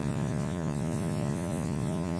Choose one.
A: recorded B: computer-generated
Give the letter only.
B